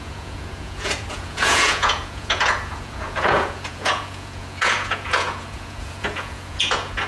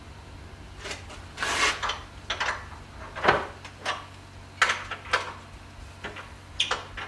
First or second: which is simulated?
first